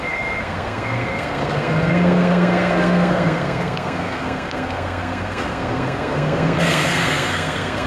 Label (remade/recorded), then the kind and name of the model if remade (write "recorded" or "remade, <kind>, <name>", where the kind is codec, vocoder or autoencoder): remade, codec, SNAC